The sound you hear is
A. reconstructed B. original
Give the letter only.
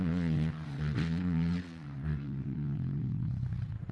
A